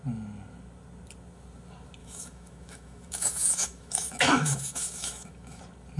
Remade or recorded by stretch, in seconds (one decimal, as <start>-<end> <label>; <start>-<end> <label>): 0.0-2.0 recorded; 2.0-5.6 remade; 5.6-6.0 recorded